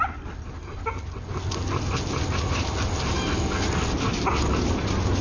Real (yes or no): yes